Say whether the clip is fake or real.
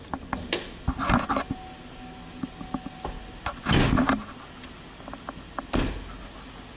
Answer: real